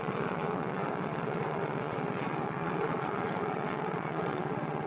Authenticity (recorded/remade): remade